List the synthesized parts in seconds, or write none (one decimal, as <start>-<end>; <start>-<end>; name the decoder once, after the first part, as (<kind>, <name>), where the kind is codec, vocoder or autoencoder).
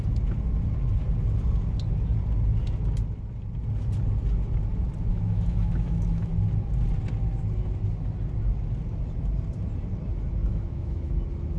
5.1-6.3 (autoencoder, DAC-VAE); 10.4-11.1